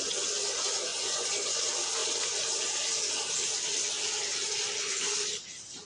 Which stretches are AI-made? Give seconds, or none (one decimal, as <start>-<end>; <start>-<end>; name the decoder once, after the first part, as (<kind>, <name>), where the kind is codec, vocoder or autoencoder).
0.9-1.6 (vocoder, Vocos)

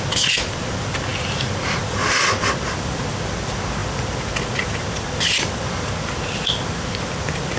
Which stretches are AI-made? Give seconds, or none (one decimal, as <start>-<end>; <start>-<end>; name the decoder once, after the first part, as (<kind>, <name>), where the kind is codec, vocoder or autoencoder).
none

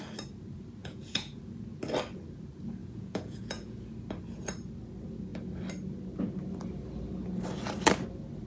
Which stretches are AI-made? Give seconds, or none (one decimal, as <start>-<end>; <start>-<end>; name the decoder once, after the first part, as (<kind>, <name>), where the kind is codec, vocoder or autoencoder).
0.8-1.4 (vocoder, Vocos); 2.8-3.9